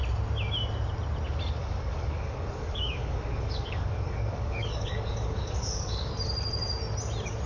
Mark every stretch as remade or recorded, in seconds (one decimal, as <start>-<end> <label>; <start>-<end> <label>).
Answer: 0.0-1.6 recorded; 1.6-6.1 remade; 6.1-7.5 recorded